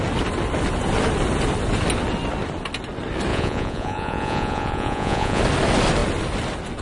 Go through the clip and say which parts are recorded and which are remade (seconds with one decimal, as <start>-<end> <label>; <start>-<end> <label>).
0.0-3.3 recorded; 3.3-5.4 remade; 5.4-6.8 recorded